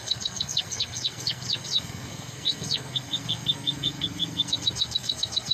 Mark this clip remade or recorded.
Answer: remade